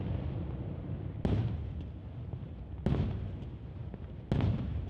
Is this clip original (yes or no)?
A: yes